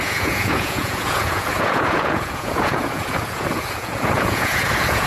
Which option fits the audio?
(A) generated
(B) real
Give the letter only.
A